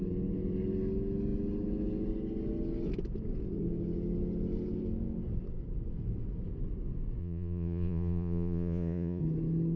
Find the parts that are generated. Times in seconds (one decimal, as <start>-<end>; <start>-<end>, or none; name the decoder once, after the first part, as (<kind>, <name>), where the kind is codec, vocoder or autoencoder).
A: 7.2-9.2 (vocoder, Vocos)